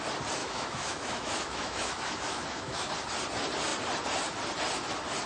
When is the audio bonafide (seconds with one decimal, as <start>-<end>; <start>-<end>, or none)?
0.0-0.4; 2.9-5.3